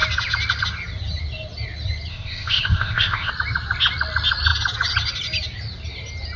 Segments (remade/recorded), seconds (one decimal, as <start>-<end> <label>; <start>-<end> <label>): 0.0-2.1 recorded; 2.1-3.3 remade; 3.3-6.4 recorded

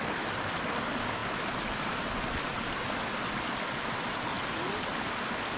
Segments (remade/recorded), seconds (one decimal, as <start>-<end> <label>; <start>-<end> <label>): 0.0-5.6 recorded

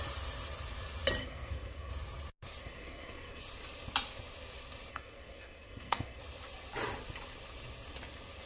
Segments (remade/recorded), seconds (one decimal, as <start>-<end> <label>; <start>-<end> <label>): 0.0-1.2 recorded; 1.2-1.9 remade; 1.9-2.6 recorded; 2.6-3.4 remade; 3.4-4.9 recorded; 4.9-6.2 remade; 6.2-8.5 recorded

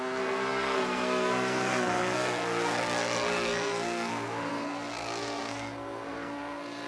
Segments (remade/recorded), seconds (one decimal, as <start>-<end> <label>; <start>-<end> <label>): 0.0-6.9 remade

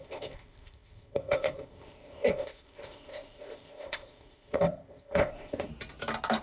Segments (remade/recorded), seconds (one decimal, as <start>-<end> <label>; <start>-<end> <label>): 0.0-5.7 remade; 5.7-6.4 recorded

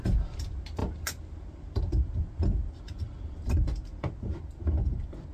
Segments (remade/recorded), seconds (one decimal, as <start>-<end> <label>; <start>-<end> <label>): 0.0-5.3 recorded

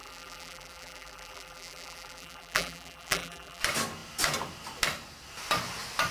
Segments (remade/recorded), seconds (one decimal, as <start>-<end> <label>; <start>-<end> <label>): 0.0-3.6 remade; 3.6-6.1 recorded

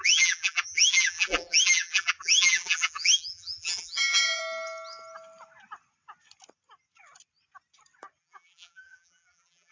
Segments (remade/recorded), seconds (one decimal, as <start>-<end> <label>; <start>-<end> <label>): 0.0-4.4 remade; 4.4-8.2 recorded; 8.2-9.7 remade